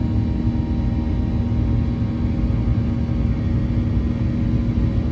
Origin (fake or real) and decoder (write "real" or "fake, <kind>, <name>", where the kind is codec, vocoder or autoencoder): real